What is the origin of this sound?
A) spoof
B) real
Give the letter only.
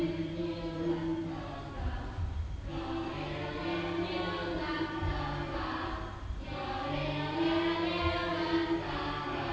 B